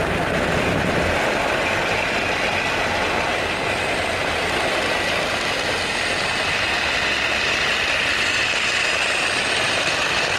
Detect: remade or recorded recorded